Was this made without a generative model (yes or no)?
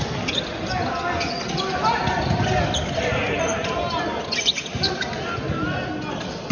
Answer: yes